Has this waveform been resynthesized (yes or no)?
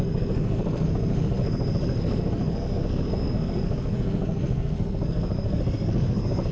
yes